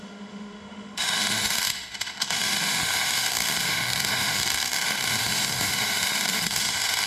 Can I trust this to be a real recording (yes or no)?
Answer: no